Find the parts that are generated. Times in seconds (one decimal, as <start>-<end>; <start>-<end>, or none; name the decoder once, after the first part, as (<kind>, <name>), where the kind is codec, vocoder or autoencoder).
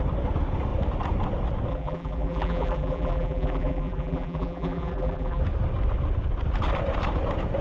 1.7-5.4 (vocoder, BigVGAN v2)